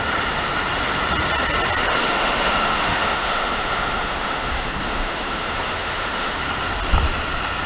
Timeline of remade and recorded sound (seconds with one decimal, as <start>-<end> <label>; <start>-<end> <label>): 0.0-1.9 recorded; 1.9-6.4 remade; 6.4-7.7 recorded

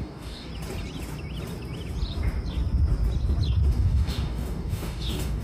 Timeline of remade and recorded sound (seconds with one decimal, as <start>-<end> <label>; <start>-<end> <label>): 0.0-0.5 remade; 0.5-3.7 recorded; 3.7-5.4 remade

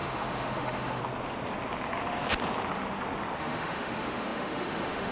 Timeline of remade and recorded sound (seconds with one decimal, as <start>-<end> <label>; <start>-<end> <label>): 0.0-1.0 remade; 1.0-3.4 recorded; 3.4-5.1 remade

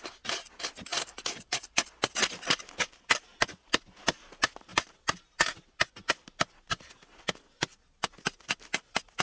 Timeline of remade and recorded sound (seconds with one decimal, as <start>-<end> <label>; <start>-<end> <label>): 0.0-9.2 recorded

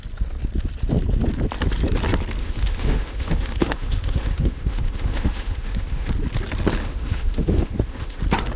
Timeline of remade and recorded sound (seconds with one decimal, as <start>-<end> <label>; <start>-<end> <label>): 0.0-2.4 recorded; 2.4-6.1 remade; 6.1-6.8 recorded; 6.8-8.2 remade; 8.2-8.6 recorded

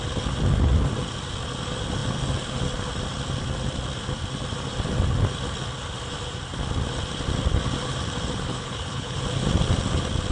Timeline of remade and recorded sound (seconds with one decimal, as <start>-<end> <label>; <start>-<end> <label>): 0.0-8.5 recorded; 8.5-9.2 remade; 9.2-10.3 recorded

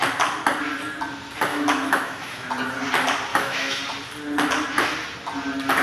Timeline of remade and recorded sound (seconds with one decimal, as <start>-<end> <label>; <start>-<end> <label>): 0.0-1.5 recorded; 1.5-2.5 remade; 2.5-3.3 recorded; 3.3-3.8 remade; 3.8-5.8 recorded

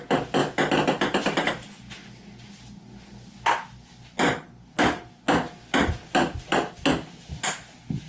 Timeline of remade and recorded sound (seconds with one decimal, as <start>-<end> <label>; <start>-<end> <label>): 0.0-8.1 recorded